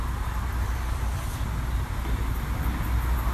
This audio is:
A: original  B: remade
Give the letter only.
A